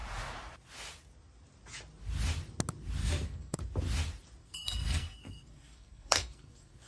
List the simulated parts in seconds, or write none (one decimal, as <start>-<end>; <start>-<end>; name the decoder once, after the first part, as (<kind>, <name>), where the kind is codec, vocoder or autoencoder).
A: 3.0-3.6 (codec, SNAC); 4.4-6.9